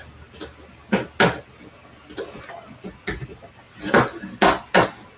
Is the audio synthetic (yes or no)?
no